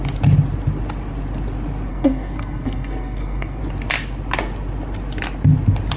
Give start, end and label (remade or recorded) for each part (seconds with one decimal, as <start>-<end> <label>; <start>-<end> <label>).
0.0-1.9 recorded; 1.9-3.6 remade; 3.6-6.0 recorded